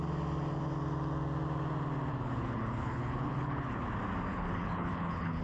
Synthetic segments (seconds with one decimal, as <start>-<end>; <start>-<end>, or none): 2.1-3.8; 4.3-5.4

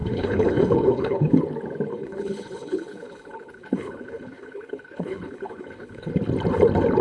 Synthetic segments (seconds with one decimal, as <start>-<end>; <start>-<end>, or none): 0.0-1.4; 1.9-6.1